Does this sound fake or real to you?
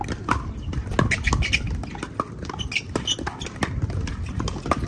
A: real